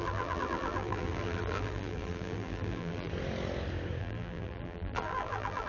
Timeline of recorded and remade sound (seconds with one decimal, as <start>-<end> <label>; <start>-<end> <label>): 0.0-3.1 remade; 3.1-4.0 recorded; 4.0-5.7 remade